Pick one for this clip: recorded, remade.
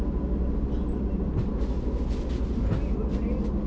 recorded